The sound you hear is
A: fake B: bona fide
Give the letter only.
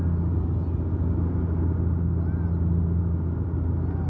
B